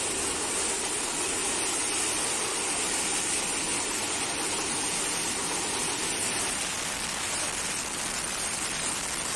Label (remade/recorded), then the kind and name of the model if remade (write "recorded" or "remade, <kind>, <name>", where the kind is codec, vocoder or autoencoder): recorded